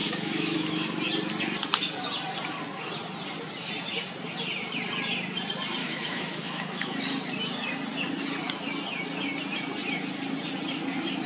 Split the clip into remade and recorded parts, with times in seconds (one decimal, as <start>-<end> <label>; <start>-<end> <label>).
0.0-1.0 remade; 1.0-5.8 recorded; 5.8-7.0 remade; 7.0-11.3 recorded